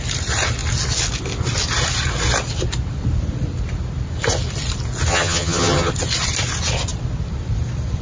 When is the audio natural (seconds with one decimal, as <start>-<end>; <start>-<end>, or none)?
0.0-5.1; 5.9-8.0